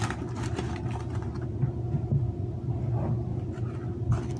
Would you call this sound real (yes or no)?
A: yes